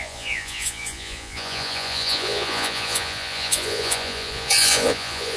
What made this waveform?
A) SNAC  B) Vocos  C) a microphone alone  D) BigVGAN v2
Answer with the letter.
B